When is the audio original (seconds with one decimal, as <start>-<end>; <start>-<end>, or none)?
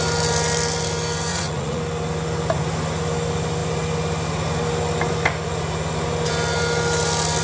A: 0.0-1.3; 1.8-7.4